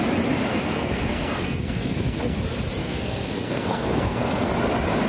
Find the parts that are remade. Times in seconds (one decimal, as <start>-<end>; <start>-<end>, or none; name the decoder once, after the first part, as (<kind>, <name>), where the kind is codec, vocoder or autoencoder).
0.5-2.4 (codec, SNAC); 2.8-4.5